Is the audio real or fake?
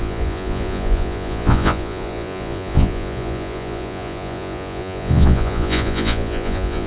fake